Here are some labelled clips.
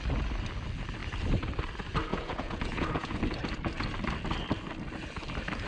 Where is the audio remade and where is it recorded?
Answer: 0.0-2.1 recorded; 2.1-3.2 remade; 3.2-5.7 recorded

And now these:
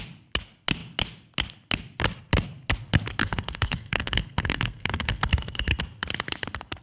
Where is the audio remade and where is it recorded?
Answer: 0.0-3.2 recorded; 3.2-5.8 remade; 5.8-6.8 recorded

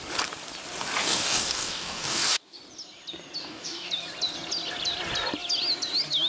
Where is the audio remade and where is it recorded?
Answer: 0.0-1.0 recorded; 1.0-2.6 remade; 2.6-3.4 recorded; 3.4-3.9 remade; 3.9-6.3 recorded

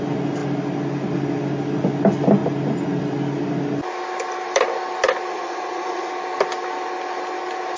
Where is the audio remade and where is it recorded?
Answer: 0.0-5.3 recorded; 5.3-6.1 remade; 6.1-7.8 recorded

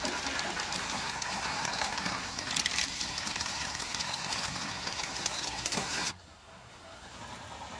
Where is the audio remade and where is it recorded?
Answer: 0.0-0.8 recorded; 0.8-2.5 remade; 2.5-2.9 recorded; 2.9-7.2 remade; 7.2-7.8 recorded

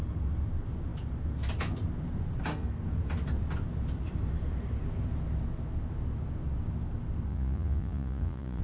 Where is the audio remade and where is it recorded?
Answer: 0.0-7.3 recorded; 7.3-8.6 remade

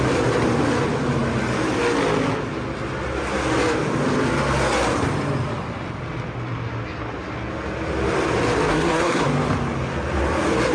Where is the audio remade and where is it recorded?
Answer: 0.0-8.7 recorded; 8.7-9.2 remade; 9.2-10.7 recorded